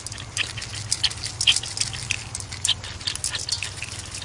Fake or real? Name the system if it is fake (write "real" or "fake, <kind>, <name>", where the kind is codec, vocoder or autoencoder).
real